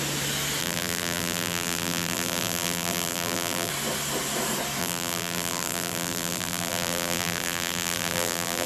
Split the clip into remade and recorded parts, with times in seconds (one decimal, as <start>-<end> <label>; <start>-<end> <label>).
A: 0.0-0.6 recorded; 0.6-3.7 remade; 3.7-4.8 recorded; 4.8-8.7 remade